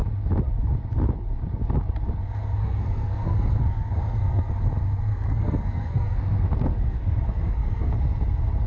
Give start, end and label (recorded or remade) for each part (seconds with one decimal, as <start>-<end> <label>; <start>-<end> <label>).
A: 0.0-2.6 recorded; 2.6-4.5 remade; 4.5-5.1 recorded; 5.1-7.9 remade; 7.9-8.7 recorded